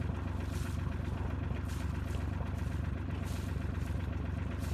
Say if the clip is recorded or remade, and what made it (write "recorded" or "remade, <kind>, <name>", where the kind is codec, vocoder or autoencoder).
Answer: recorded